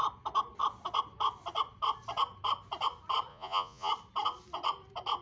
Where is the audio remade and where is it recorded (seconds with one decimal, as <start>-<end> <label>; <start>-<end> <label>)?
0.0-3.3 recorded; 3.3-3.9 remade; 3.9-5.2 recorded